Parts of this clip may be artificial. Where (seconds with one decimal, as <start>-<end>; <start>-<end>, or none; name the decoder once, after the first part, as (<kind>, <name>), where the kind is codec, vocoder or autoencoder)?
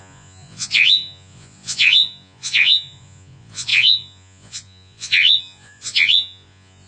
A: 0.0-6.9 (vocoder, Vocos)